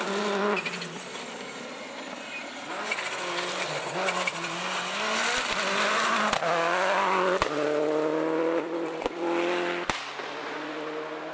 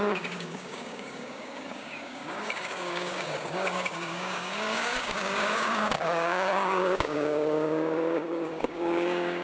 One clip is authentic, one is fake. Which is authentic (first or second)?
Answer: first